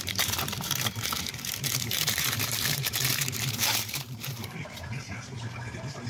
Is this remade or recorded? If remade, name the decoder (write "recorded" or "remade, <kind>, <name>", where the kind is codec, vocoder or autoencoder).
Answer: remade, vocoder, BigVGAN v2